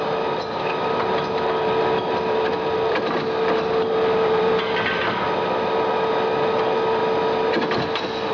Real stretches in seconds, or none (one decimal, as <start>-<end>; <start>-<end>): 7.0-8.3